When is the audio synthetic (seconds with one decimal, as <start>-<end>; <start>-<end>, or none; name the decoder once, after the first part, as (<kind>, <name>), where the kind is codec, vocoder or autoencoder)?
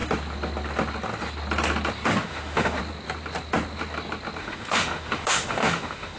2.2-2.8 (autoencoder, DAC-VAE); 4.4-6.2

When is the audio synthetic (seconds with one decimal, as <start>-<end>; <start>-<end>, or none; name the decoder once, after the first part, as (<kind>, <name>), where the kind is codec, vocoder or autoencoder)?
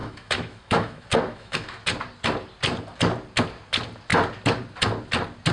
0.0-1.8 (autoencoder, DAC-VAE)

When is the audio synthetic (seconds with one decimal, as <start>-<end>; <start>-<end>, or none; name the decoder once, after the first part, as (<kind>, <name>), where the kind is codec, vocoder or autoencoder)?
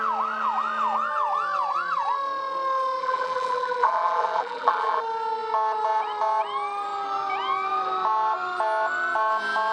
3.0-5.0 (vocoder, BigVGAN v2)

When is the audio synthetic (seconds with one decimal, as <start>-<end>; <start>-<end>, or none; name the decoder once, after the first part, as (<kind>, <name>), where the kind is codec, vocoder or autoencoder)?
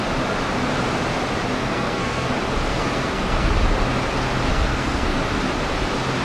1.6-2.3 (codec, SNAC); 2.7-3.5; 4.5-5.2